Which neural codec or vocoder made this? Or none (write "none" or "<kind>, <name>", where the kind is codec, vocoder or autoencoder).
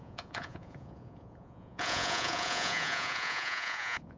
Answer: vocoder, Vocos